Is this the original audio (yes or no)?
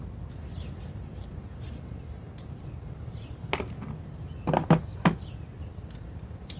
yes